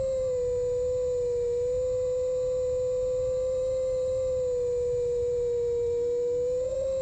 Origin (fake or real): real